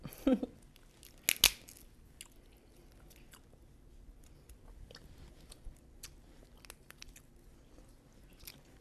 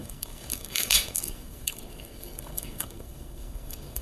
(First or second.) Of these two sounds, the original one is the first